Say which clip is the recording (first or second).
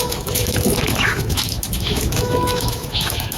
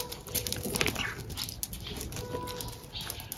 second